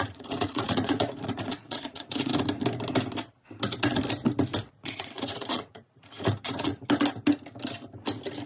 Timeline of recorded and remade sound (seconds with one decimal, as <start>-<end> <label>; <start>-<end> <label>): 0.0-2.3 remade; 2.3-4.7 recorded; 4.7-6.7 remade; 6.7-8.5 recorded